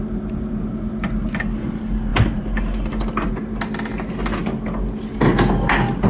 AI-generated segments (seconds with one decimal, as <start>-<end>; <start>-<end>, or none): 2.1-3.3